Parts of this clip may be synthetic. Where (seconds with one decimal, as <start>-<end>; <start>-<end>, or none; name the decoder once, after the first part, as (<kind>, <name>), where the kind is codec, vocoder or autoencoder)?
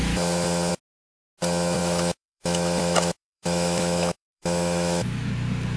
1.8-5.3 (autoencoder, DAC-VAE)